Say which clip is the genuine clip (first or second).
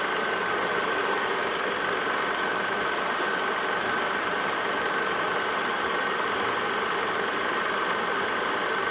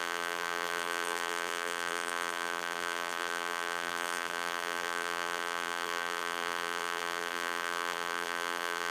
first